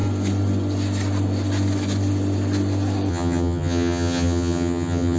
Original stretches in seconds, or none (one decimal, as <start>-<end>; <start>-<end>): 0.0-3.1